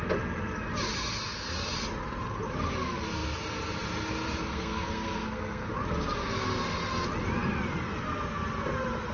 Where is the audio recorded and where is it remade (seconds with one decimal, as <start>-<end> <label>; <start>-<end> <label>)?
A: 0.0-4.4 recorded; 4.4-5.7 remade; 5.7-9.1 recorded